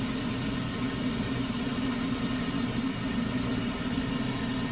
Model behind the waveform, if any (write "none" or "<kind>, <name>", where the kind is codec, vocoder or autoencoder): none